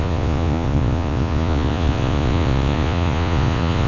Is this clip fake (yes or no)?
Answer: yes